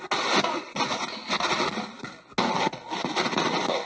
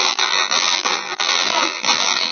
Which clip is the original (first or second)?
first